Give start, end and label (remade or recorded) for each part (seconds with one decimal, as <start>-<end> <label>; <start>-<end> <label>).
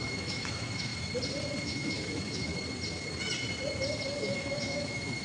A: 0.0-0.9 remade; 0.9-1.6 recorded; 1.6-2.5 remade; 2.5-4.2 recorded; 4.2-5.2 remade